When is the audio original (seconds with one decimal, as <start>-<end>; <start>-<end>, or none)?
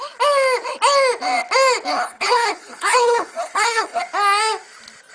0.0-1.9; 4.0-5.1